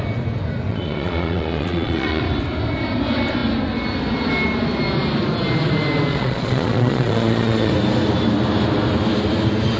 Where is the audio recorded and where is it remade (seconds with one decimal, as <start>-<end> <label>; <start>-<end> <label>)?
0.0-0.7 recorded; 0.7-2.2 remade; 2.2-6.1 recorded; 6.1-7.7 remade; 7.7-9.8 recorded